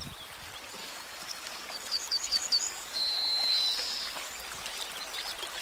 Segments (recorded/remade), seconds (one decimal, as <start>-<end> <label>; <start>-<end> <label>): 0.0-0.8 recorded; 0.8-4.2 remade; 4.2-5.6 recorded